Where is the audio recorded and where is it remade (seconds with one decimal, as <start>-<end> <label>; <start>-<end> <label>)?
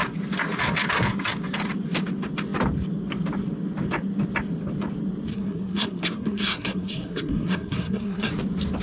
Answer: 0.0-5.3 recorded; 5.3-8.3 remade; 8.3-8.8 recorded